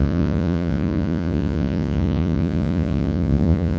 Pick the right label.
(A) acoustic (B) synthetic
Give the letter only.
B